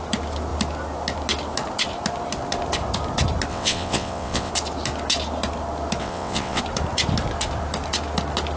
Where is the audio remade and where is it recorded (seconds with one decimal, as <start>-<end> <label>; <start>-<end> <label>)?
0.0-3.5 recorded; 3.5-4.5 remade; 4.5-6.0 recorded; 6.0-6.6 remade; 6.6-8.6 recorded